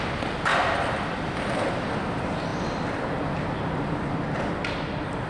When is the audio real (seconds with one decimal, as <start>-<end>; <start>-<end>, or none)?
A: 0.0-0.5; 1.9-5.3